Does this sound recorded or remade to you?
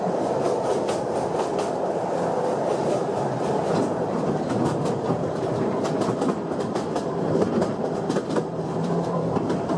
remade